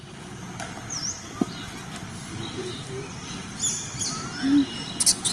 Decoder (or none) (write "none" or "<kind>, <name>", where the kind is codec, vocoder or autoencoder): none